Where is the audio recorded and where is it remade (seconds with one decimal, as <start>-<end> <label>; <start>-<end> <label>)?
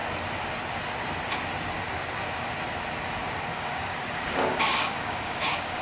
0.0-3.5 recorded; 3.5-5.8 remade